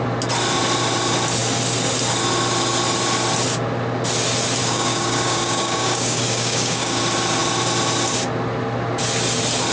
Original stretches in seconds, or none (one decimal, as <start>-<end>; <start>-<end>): 0.0-4.6; 7.0-9.7